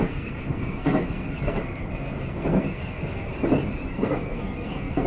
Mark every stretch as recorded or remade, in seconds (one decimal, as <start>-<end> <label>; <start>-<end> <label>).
0.0-3.3 remade; 3.3-3.9 recorded; 3.9-5.1 remade